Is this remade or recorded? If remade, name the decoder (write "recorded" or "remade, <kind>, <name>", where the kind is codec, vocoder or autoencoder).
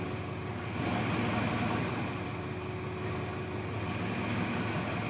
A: recorded